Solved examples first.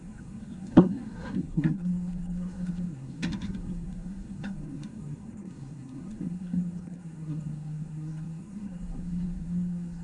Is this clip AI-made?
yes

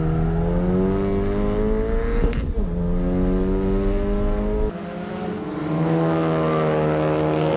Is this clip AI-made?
no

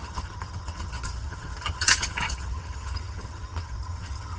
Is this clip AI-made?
yes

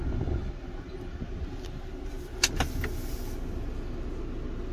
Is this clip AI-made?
no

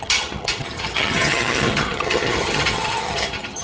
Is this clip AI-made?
yes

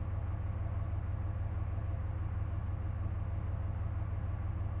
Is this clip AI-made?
no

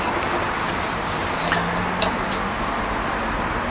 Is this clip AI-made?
no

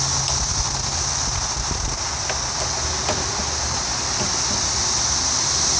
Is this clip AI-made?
no